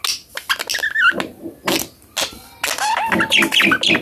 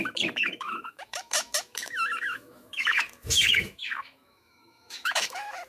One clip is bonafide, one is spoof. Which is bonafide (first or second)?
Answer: first